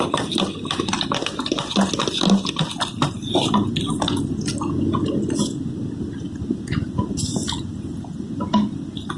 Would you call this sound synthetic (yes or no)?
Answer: no